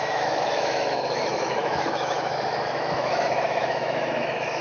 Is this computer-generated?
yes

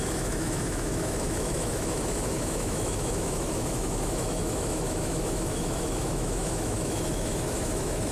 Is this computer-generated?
yes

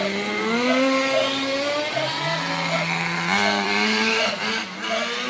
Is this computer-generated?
no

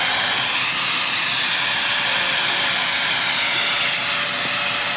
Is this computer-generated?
no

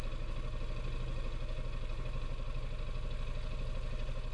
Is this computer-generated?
no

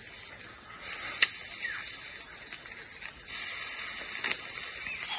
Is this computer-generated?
no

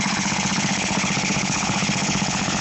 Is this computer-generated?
yes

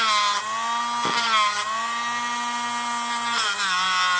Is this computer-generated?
no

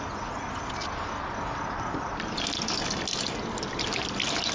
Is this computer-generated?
no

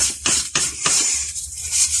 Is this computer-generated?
yes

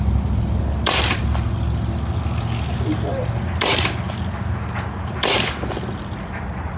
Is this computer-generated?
no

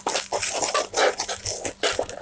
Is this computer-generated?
no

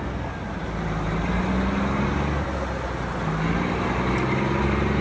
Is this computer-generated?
no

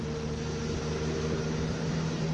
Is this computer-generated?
no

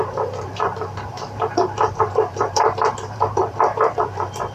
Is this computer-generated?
yes